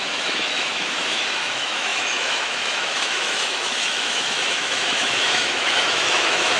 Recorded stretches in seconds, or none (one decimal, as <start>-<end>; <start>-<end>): none